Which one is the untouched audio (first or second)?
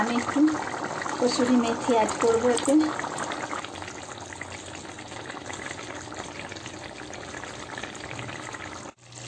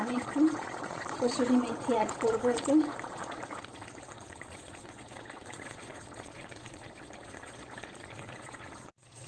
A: first